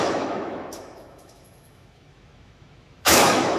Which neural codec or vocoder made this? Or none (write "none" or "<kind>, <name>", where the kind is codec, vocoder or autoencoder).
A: autoencoder, DAC-VAE